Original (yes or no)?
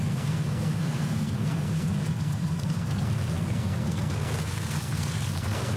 no